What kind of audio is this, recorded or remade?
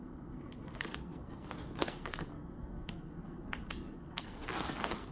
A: remade